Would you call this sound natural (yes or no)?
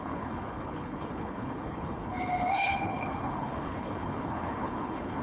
no